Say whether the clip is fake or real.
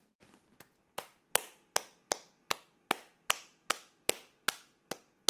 real